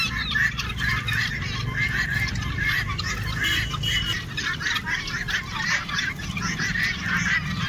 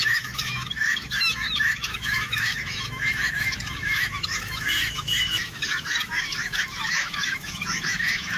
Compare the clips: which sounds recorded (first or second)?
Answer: first